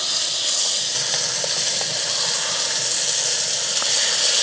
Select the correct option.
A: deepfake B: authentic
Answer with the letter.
B